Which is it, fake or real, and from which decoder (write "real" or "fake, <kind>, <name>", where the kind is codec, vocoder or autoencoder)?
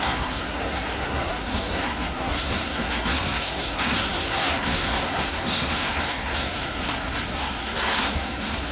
fake, codec, SNAC